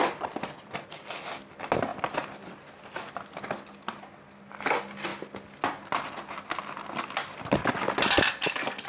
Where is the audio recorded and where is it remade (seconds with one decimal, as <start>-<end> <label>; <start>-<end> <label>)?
0.0-8.9 recorded

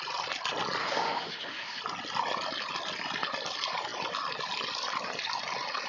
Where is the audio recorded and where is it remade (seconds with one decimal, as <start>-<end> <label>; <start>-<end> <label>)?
0.0-0.8 recorded; 0.8-1.8 remade; 1.8-5.9 recorded

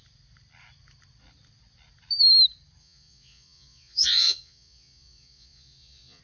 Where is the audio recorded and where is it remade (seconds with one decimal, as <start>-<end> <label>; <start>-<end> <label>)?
0.0-2.8 recorded; 2.8-6.2 remade

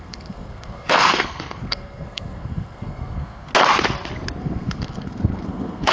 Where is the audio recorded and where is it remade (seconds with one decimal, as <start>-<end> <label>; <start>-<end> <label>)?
0.0-3.5 remade; 3.5-4.4 recorded; 4.4-5.9 remade

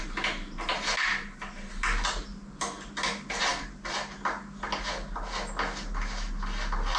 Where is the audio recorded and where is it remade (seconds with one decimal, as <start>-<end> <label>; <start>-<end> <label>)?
0.0-7.0 recorded

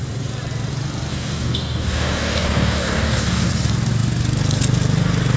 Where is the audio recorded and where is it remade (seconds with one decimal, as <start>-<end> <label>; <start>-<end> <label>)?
0.0-1.1 recorded; 1.1-3.5 remade; 3.5-5.4 recorded

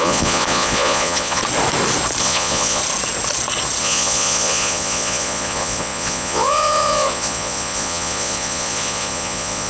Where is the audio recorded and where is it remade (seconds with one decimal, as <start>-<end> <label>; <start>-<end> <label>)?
0.0-1.4 remade; 1.4-2.2 recorded; 2.2-2.8 remade; 2.8-3.8 recorded; 3.8-9.7 remade